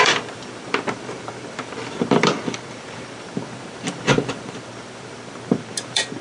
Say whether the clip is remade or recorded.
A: remade